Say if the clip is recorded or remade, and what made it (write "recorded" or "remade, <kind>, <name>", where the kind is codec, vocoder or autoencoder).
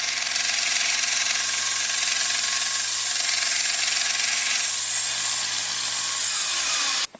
recorded